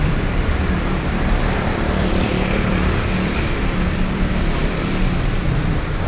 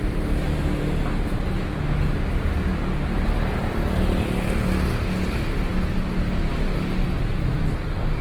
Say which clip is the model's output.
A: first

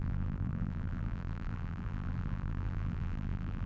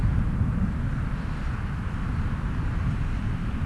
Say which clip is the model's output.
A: first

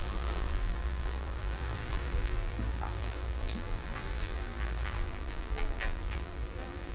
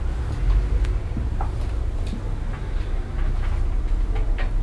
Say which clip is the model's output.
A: first